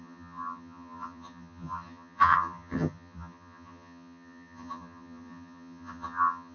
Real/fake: fake